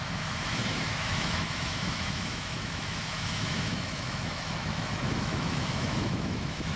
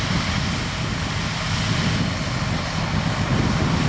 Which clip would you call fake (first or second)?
first